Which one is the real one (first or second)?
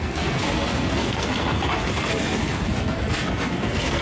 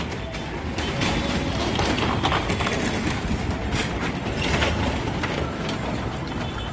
second